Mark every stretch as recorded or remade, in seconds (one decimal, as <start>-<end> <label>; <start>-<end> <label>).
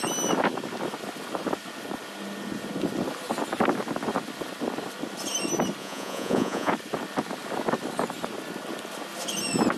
0.0-5.8 recorded; 5.8-6.7 remade; 6.7-9.8 recorded